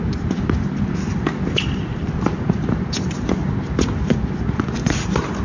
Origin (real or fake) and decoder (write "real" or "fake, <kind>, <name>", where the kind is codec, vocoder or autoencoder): real